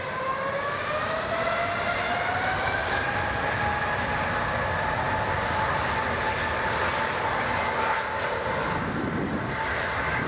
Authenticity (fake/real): real